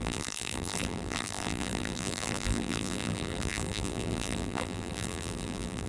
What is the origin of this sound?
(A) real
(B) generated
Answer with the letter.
B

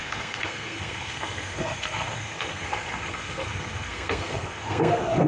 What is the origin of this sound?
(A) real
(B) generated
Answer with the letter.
B